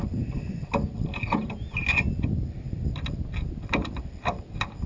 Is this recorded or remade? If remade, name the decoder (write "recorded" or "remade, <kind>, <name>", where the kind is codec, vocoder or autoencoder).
recorded